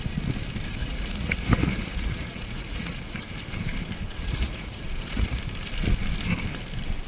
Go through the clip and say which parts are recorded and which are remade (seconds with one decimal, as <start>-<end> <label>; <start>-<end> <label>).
0.0-0.8 recorded; 0.8-3.0 remade; 3.0-4.1 recorded; 4.1-5.4 remade; 5.4-7.1 recorded